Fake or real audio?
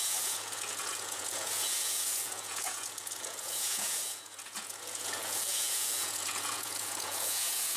fake